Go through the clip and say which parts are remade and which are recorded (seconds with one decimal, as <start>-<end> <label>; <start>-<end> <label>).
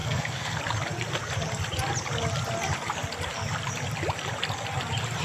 0.0-0.6 remade; 0.6-5.2 recorded